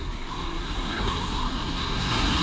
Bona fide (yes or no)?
no